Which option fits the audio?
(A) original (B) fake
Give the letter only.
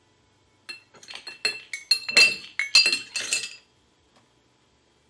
A